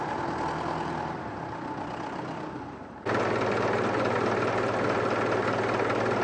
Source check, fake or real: real